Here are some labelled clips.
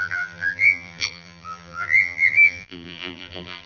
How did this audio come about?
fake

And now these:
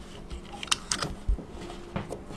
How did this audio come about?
real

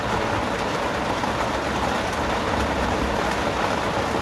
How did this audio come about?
real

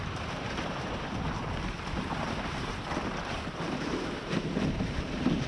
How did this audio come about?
fake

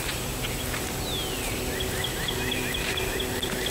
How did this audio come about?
real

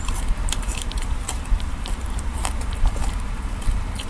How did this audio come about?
fake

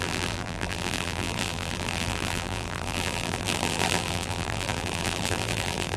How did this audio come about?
fake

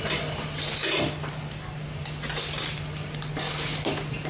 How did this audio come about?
real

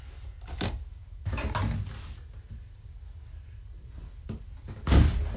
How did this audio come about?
real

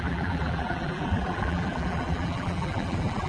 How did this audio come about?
fake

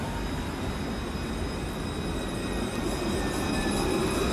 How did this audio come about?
real